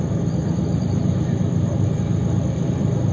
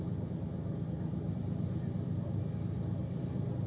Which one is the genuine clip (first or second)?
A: second